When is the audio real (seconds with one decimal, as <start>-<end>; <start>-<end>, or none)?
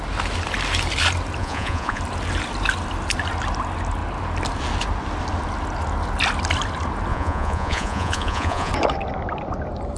0.0-1.4; 2.0-7.1; 8.7-10.0